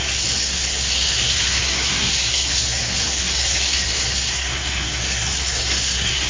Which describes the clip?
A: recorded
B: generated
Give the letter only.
B